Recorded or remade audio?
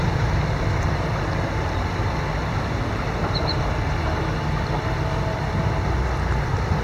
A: remade